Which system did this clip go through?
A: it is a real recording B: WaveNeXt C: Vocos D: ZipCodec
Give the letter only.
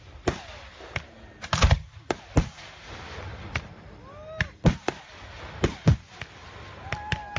A